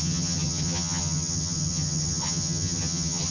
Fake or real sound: fake